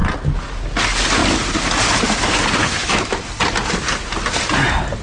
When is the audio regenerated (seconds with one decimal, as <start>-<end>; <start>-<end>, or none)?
2.6-3.2